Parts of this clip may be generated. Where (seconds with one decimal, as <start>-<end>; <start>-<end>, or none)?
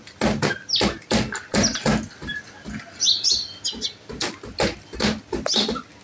none